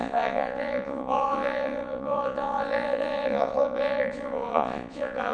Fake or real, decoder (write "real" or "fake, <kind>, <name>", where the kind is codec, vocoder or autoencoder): fake, vocoder, Vocos